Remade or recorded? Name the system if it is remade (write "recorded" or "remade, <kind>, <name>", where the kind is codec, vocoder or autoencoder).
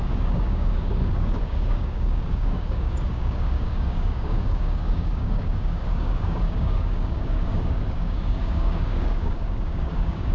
remade, codec, DAC